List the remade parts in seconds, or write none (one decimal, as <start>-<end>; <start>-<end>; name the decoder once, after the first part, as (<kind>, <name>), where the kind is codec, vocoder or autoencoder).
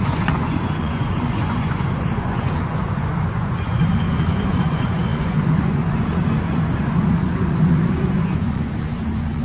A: 0.0-9.4 (vocoder, Vocos)